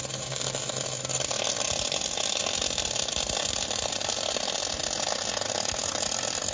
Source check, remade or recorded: recorded